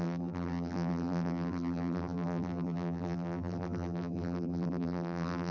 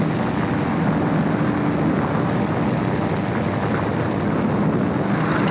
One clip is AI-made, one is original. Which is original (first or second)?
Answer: second